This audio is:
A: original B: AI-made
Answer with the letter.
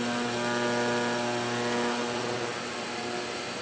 A